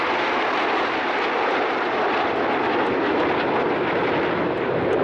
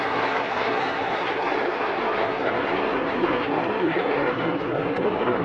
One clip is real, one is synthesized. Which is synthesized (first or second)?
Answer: second